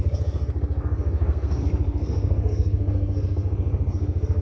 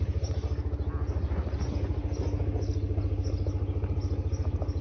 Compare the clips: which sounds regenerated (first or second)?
first